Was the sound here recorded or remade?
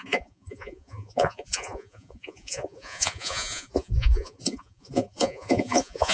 remade